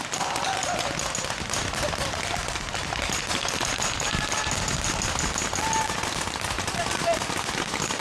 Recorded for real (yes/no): yes